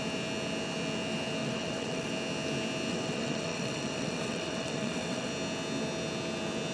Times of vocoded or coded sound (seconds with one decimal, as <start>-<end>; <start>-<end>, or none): 1.4-2.1; 2.9-5.3